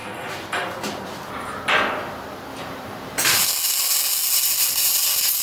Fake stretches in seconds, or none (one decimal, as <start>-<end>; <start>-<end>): 2.5-3.4